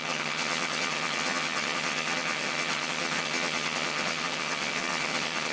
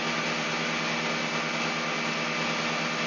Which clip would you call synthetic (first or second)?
first